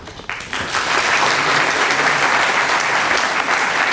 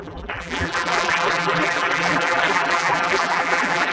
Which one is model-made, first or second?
second